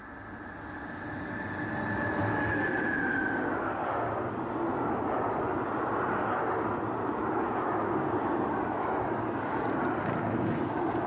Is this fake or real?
real